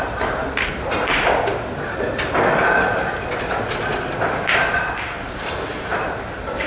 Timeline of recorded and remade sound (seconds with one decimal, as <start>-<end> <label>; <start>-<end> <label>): 0.0-6.7 recorded